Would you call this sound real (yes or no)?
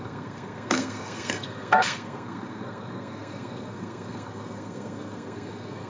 no